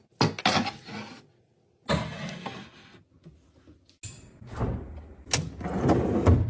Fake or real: real